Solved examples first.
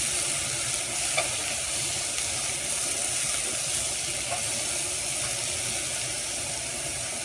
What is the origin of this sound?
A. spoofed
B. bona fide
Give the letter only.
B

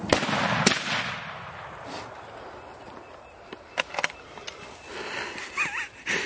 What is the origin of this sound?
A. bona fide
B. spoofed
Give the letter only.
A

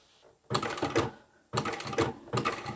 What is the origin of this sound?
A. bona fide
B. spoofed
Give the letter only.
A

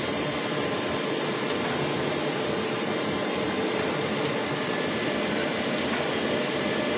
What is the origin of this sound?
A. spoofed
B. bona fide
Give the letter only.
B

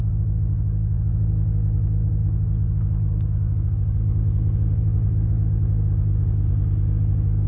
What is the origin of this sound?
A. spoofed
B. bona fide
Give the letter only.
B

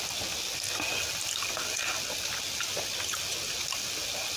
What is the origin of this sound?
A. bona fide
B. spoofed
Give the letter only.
A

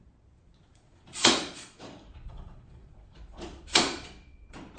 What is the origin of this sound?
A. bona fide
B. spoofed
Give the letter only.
B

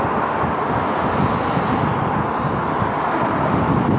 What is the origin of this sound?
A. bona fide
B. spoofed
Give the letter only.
A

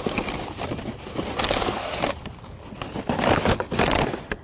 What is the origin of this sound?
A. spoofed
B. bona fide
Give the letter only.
B